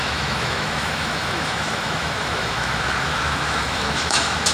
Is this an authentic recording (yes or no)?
no